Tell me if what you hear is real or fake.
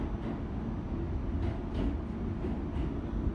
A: real